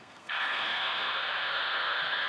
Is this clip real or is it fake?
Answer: fake